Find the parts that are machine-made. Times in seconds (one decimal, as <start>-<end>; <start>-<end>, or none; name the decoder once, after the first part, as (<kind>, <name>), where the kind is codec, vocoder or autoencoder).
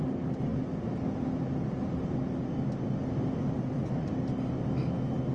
none